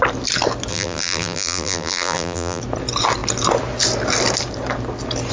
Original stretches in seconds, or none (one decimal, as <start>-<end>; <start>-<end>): 0.0-0.7; 2.6-5.3